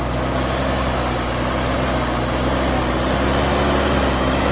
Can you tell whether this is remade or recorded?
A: recorded